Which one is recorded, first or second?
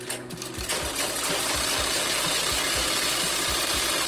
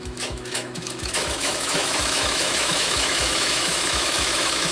first